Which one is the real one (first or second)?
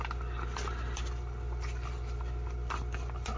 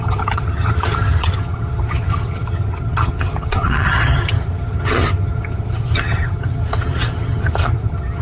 first